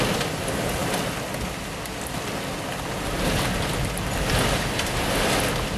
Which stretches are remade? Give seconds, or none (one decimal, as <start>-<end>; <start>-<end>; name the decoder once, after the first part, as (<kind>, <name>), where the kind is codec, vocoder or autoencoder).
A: none